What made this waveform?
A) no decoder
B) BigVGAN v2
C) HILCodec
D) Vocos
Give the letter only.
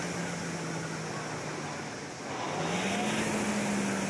A